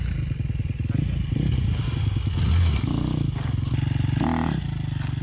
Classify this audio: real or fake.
real